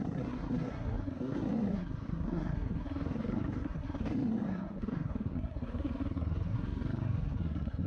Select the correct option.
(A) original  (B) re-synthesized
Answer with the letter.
B